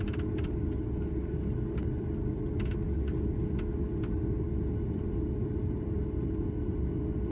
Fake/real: real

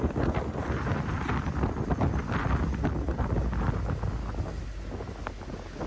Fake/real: real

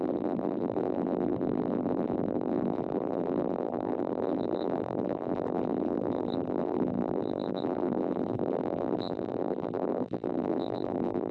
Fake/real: fake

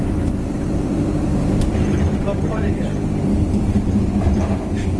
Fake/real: fake